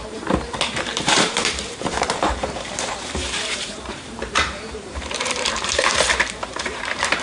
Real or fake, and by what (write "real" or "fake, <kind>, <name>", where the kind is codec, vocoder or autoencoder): fake, vocoder, BigVGAN v2